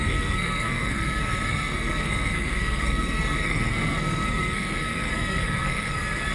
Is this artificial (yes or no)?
yes